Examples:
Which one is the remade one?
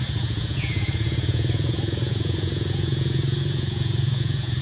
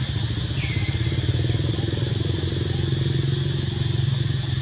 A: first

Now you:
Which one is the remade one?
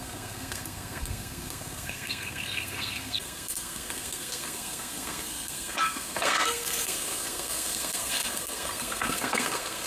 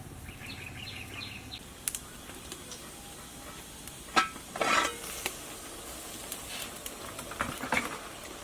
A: first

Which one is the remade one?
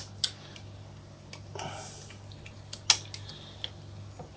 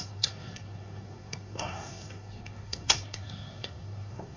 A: second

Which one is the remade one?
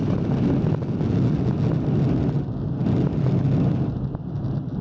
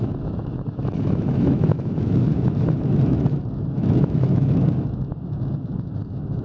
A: second